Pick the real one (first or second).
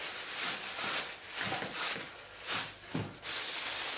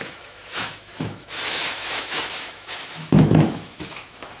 first